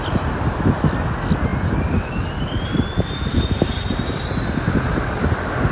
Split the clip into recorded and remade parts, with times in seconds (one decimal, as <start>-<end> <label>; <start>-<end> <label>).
0.0-1.5 recorded; 1.5-4.3 remade; 4.3-5.7 recorded